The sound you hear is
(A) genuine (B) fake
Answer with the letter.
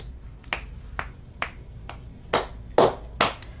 A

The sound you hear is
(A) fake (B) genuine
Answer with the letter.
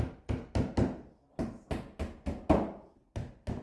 B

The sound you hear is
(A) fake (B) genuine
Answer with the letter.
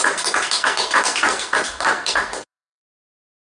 A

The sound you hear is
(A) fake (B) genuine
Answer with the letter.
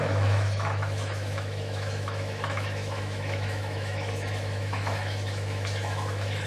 A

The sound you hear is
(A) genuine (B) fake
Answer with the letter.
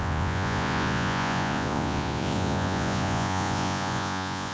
B